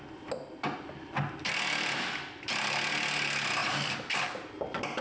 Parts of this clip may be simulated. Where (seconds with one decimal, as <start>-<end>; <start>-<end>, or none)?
none